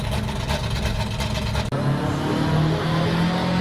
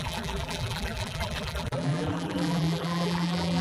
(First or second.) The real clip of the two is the first